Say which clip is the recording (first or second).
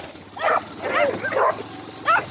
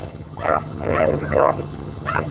first